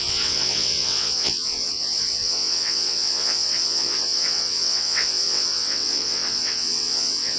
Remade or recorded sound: remade